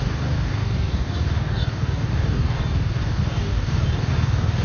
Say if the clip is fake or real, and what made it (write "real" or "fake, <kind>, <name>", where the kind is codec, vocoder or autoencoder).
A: fake, codec, DAC